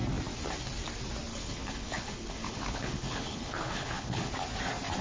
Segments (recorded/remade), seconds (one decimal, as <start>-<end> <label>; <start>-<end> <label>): 0.0-1.3 recorded; 1.3-4.3 remade; 4.3-5.0 recorded